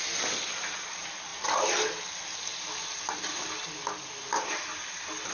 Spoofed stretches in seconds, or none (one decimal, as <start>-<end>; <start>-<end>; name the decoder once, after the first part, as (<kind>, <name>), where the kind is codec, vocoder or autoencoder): none